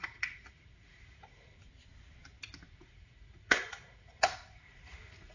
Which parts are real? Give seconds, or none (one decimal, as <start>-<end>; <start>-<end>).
1.6-2.7